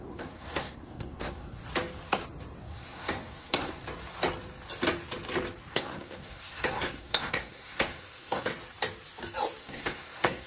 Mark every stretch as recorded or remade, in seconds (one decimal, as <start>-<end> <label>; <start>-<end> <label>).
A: 0.0-1.6 remade; 1.6-2.6 recorded; 2.6-3.8 remade; 3.8-5.7 recorded; 5.7-8.5 remade; 8.5-9.6 recorded; 9.6-10.5 remade